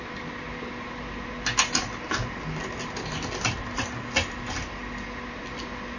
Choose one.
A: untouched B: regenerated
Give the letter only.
A